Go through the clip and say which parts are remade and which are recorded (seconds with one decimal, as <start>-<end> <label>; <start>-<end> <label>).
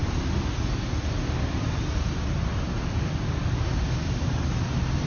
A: 0.0-5.1 recorded